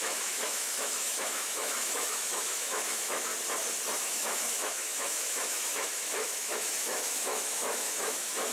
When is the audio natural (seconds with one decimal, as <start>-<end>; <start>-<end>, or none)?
3.3-4.0